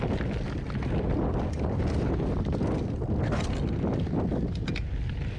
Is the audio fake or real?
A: real